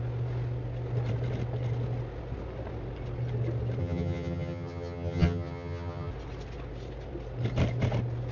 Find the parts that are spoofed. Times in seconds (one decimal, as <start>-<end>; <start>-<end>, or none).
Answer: 3.8-6.1